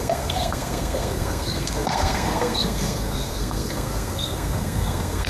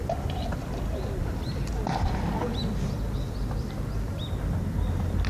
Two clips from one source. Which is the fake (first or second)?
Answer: first